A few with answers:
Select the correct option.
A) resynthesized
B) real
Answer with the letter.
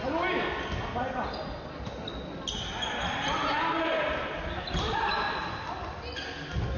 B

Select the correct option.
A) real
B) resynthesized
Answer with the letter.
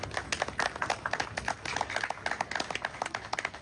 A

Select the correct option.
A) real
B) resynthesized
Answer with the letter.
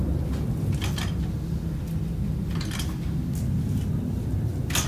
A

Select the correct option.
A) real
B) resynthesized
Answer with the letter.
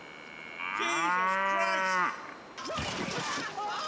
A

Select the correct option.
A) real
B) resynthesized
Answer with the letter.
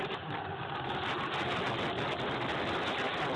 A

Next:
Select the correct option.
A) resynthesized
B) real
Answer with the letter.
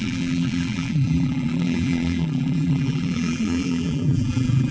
A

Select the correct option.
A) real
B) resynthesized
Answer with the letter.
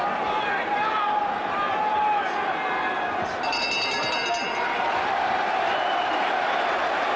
A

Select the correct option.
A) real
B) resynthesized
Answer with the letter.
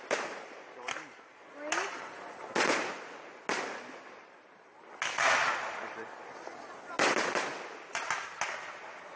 A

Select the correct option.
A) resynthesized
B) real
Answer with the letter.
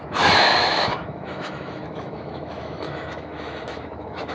A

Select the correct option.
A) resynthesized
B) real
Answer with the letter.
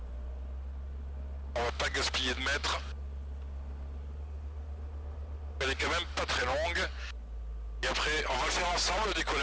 B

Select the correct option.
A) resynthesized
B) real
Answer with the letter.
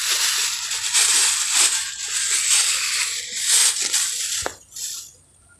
B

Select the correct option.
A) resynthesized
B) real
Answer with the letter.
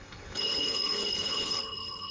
A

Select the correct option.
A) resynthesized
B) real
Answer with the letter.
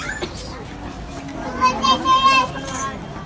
B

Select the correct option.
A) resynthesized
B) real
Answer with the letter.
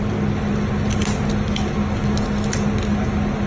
B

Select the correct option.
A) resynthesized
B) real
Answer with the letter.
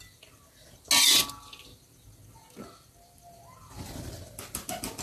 B